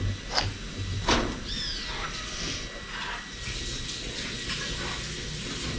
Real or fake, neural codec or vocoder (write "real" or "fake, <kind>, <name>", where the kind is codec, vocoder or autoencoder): real